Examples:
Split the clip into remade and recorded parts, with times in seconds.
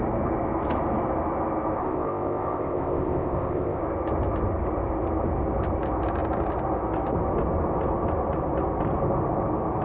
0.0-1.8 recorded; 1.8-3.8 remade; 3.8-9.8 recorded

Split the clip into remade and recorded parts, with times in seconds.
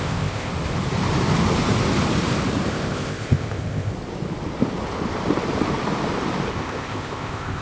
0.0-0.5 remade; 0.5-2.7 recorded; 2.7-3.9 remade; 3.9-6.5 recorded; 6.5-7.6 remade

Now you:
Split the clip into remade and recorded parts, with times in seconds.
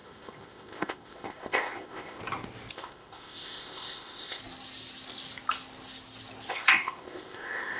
0.0-2.2 remade; 2.2-2.7 recorded; 2.7-4.4 remade; 4.4-6.5 recorded; 6.5-7.8 remade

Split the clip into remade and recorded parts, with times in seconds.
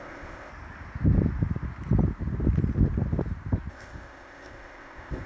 0.0-0.5 remade; 0.5-3.7 recorded; 3.7-5.3 remade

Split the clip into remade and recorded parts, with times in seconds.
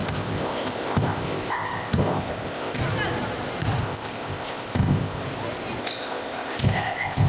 0.0-2.8 remade; 2.8-3.8 recorded; 3.8-5.2 remade; 5.2-5.8 recorded; 5.8-7.3 remade